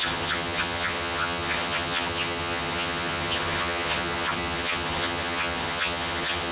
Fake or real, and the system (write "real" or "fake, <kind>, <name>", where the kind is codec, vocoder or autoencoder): fake, vocoder, HiFi-GAN